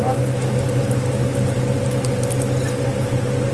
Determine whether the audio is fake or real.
real